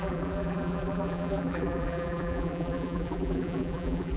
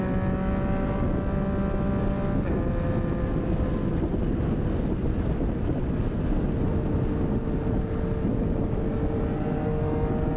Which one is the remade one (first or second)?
first